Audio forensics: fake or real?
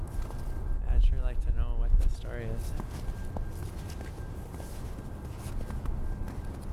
real